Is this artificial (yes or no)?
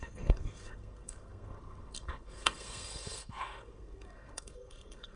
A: yes